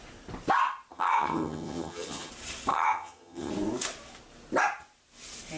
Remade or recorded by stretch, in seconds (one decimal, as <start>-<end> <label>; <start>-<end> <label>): 0.0-0.9 recorded; 0.9-2.3 remade; 2.3-2.7 recorded; 2.7-3.5 remade; 3.5-5.6 recorded